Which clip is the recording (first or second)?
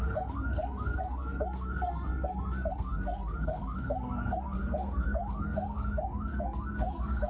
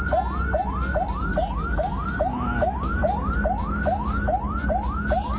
second